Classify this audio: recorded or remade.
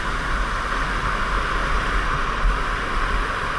recorded